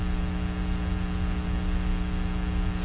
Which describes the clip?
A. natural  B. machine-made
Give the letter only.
A